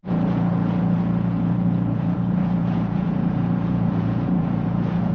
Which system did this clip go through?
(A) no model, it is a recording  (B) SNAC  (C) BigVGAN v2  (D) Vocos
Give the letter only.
D